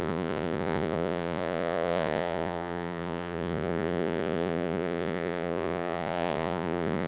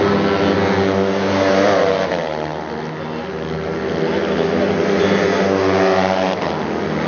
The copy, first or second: first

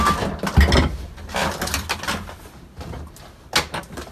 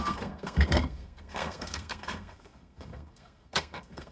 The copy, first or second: second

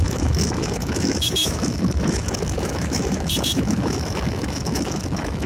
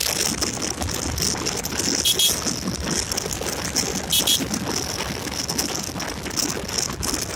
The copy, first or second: first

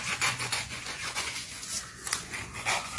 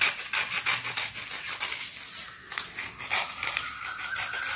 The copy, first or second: first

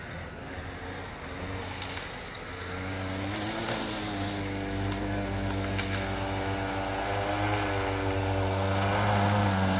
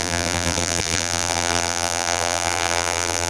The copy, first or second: second